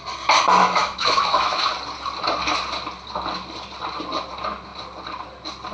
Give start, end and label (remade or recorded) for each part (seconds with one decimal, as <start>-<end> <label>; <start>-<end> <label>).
0.0-0.6 recorded; 0.6-1.6 remade; 1.6-5.7 recorded